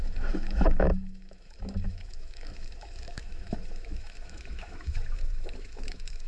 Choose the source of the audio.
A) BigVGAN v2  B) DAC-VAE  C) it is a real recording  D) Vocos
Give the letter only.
B